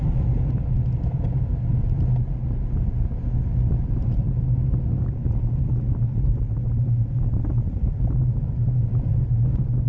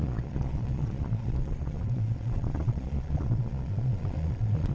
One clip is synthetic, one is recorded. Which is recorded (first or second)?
first